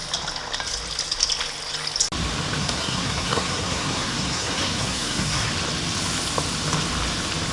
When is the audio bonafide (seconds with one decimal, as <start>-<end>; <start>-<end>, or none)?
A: 0.0-2.6; 5.5-7.5